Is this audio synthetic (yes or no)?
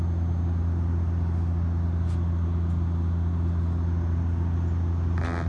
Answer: no